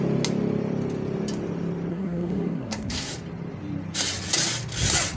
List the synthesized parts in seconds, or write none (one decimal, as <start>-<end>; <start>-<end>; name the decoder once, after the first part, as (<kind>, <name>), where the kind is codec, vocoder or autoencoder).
1.9-3.1 (codec, SNAC)